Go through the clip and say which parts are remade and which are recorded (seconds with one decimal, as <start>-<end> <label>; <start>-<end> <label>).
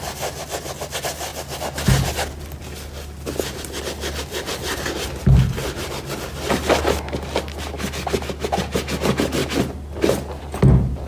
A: 0.0-11.1 recorded